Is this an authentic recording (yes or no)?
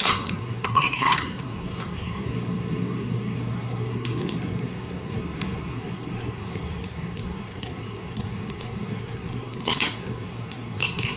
no